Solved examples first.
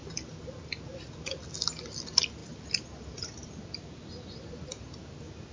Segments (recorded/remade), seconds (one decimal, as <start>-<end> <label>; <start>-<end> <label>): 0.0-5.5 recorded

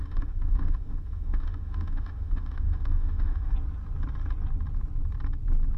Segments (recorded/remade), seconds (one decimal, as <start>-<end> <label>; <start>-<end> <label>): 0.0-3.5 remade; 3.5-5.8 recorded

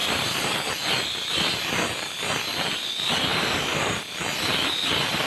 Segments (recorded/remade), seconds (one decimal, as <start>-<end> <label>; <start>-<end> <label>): 0.0-0.6 remade; 0.6-3.3 recorded; 3.3-4.0 remade; 4.0-5.3 recorded

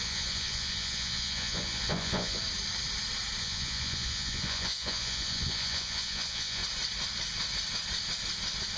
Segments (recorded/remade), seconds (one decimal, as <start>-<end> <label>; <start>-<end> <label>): 0.0-2.4 remade; 2.4-3.4 recorded; 3.4-6.6 remade; 6.6-8.8 recorded